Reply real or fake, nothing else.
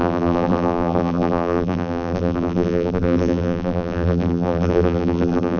fake